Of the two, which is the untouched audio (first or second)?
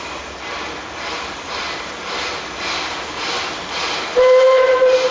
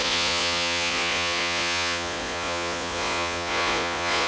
first